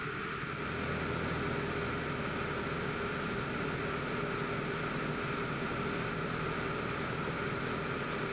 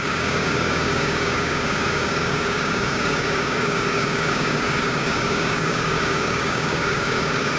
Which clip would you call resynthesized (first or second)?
second